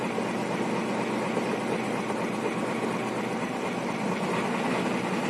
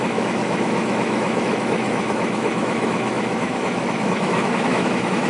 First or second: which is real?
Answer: first